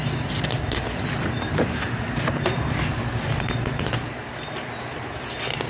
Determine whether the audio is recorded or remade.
remade